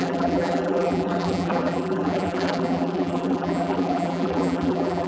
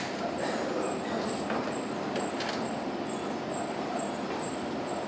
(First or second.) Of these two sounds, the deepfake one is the first